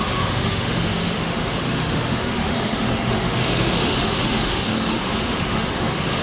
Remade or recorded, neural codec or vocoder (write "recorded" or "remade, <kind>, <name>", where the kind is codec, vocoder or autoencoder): remade, autoencoder, DAC-VAE